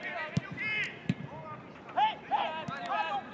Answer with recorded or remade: recorded